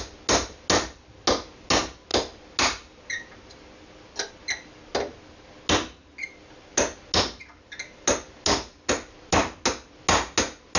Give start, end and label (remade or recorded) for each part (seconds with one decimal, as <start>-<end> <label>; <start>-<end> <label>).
0.0-10.8 recorded